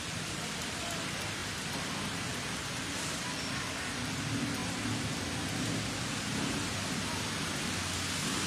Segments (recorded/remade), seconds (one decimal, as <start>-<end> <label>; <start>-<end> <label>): 0.0-8.5 recorded